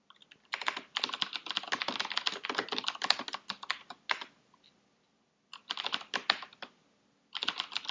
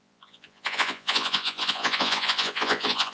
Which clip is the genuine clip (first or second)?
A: first